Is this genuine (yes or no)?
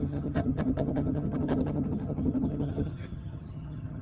no